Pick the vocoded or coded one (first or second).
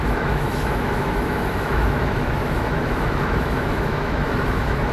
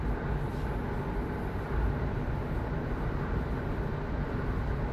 first